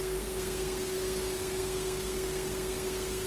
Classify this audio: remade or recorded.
remade